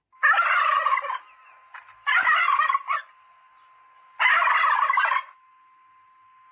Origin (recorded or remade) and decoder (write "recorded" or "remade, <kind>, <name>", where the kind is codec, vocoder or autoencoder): recorded